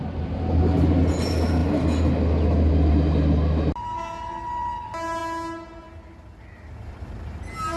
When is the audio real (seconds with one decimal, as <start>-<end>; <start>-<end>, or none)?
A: 0.0-7.8